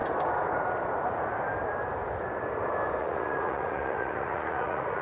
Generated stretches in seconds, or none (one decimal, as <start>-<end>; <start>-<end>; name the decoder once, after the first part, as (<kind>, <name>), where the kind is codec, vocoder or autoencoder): 3.0-5.0 (vocoder, Vocos)